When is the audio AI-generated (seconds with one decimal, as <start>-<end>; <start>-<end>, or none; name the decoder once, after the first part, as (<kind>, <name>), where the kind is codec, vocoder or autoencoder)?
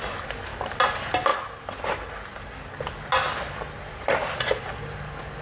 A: none